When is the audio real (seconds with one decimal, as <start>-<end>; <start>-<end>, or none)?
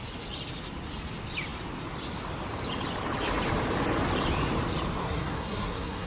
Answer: 0.0-5.0